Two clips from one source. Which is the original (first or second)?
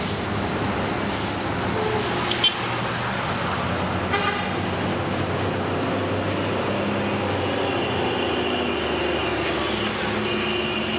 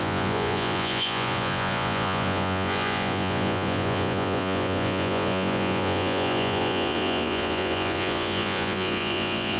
first